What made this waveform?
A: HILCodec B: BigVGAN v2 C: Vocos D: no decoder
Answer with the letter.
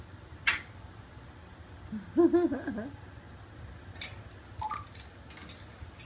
D